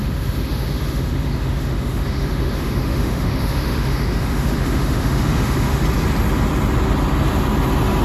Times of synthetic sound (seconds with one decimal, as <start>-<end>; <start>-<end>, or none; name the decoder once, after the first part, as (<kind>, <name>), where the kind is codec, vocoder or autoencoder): 0.0-5.8 (autoencoder, DAC-VAE)